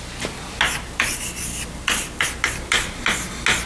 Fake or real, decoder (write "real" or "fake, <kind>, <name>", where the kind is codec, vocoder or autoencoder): real